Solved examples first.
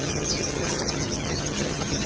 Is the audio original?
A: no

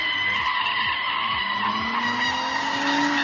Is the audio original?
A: yes